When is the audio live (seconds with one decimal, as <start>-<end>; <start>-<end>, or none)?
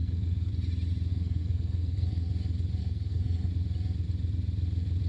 0.5-1.1; 2.3-2.8; 3.5-5.1